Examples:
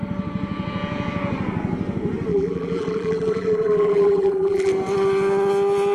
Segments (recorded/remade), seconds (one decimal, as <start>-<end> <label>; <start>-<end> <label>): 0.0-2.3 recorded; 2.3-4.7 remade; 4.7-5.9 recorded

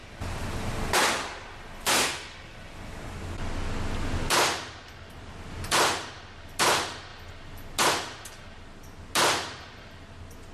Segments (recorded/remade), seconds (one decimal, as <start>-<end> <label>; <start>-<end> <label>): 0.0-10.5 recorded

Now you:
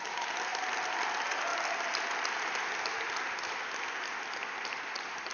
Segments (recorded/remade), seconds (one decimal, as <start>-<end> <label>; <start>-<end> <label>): 0.0-5.3 recorded